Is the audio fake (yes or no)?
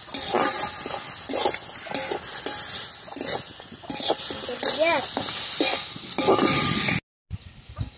no